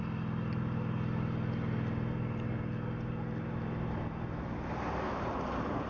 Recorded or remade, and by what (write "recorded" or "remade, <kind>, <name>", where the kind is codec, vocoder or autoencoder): recorded